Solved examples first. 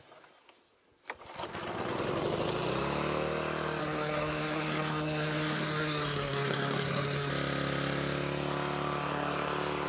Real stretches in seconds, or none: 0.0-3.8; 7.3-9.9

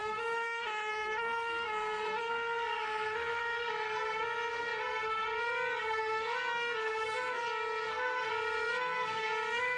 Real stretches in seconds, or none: none

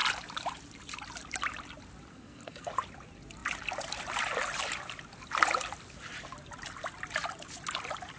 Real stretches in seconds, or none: 0.0-2.1; 2.7-8.2

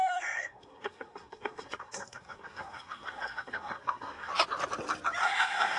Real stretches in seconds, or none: 4.3-5.2

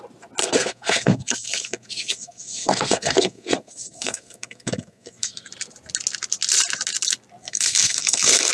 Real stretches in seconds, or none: 0.0-0.4; 5.5-7.4

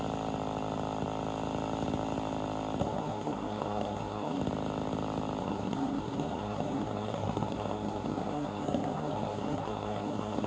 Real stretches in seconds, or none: 0.0-2.8; 4.4-5.4

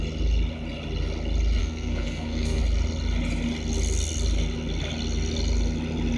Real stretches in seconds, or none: 0.0-1.6; 2.6-6.2